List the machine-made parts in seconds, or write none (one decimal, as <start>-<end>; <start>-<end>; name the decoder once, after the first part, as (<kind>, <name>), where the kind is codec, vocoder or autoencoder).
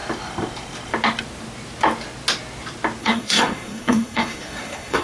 3.0-5.0 (codec, SNAC)